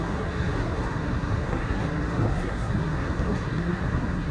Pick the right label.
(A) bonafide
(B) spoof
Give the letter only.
B